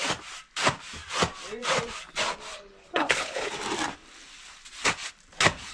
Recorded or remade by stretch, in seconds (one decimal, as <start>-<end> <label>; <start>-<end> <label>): 0.0-2.5 recorded; 2.5-3.5 remade; 3.5-5.7 recorded